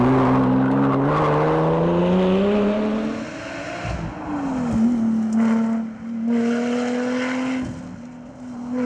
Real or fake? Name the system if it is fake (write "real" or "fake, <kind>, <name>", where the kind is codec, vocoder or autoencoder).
real